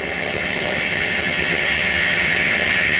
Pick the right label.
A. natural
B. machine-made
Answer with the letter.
B